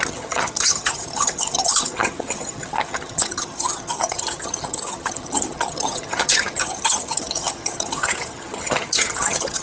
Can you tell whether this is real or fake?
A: fake